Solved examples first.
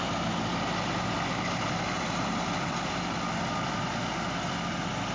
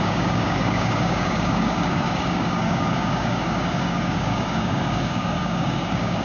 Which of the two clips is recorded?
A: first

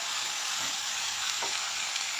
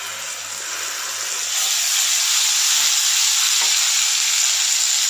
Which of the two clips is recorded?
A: second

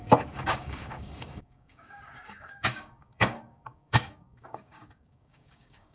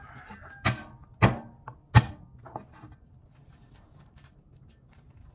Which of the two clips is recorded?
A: second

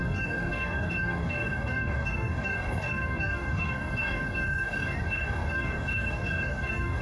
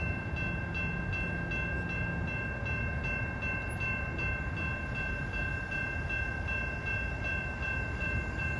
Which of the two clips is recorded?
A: second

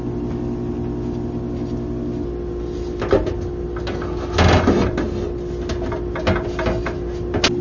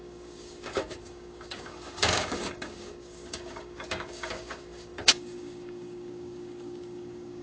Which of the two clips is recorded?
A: first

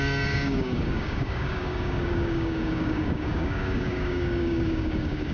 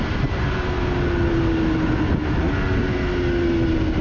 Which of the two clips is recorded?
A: second